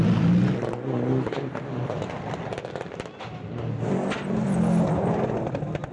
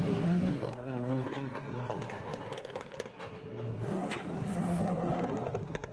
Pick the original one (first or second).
first